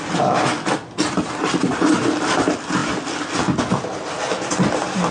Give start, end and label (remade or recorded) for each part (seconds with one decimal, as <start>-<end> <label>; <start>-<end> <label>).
0.0-5.1 recorded